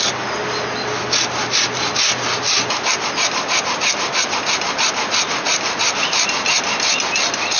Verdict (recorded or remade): recorded